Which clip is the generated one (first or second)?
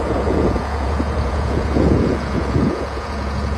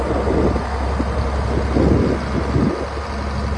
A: first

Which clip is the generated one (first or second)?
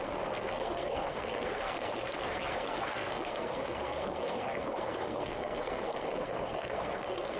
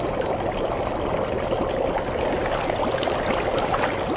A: first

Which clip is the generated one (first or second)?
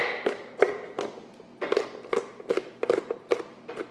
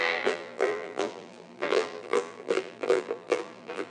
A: second